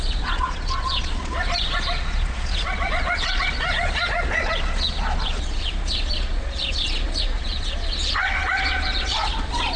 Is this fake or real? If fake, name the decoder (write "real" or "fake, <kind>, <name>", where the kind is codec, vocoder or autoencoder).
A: fake, vocoder, Vocos